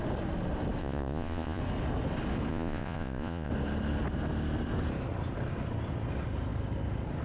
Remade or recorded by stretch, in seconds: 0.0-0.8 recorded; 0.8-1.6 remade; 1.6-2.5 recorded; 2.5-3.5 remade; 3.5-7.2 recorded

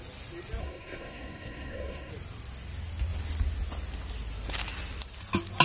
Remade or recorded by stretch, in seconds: 0.0-0.6 recorded; 0.6-2.1 remade; 2.1-5.6 recorded

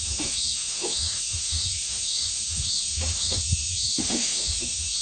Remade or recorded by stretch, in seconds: 0.0-5.0 remade

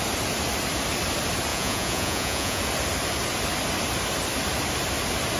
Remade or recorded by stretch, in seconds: 0.0-1.5 recorded; 1.5-2.6 remade; 2.6-5.4 recorded